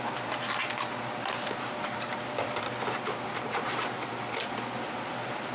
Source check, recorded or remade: recorded